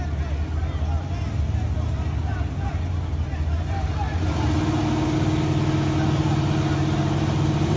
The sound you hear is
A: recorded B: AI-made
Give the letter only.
A